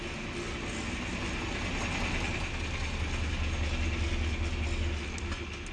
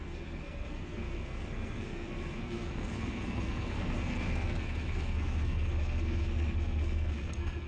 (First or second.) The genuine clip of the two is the first